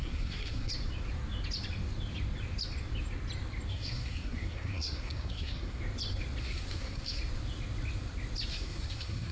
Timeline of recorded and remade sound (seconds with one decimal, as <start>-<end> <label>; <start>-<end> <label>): 0.0-0.7 remade; 0.7-3.7 recorded; 3.7-5.8 remade; 5.8-6.4 recorded; 6.4-7.2 remade; 7.2-8.5 recorded; 8.5-9.3 remade